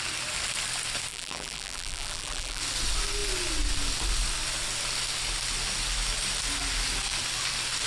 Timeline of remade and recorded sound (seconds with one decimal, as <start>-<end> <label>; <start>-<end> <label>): 0.0-1.1 recorded; 1.1-2.6 remade; 2.6-7.9 recorded